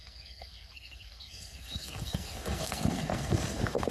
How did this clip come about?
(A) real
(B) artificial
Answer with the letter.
B